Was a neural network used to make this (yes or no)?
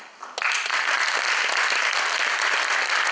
no